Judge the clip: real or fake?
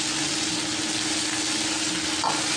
real